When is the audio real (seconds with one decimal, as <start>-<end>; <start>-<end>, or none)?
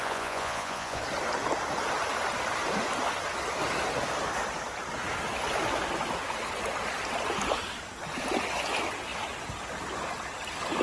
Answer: 1.0-10.8